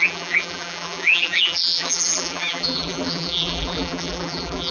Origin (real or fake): fake